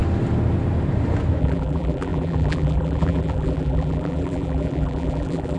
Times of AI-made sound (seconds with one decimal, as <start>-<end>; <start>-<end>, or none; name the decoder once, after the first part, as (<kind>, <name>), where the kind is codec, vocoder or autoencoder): 1.4-5.6 (vocoder, BigVGAN v2)